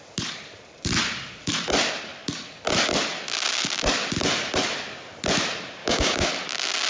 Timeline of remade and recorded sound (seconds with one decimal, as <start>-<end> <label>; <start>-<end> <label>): 0.0-5.8 recorded; 5.8-6.3 remade; 6.3-6.9 recorded